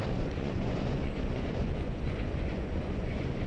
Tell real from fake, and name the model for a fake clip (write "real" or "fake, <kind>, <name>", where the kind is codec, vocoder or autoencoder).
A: fake, vocoder, Vocos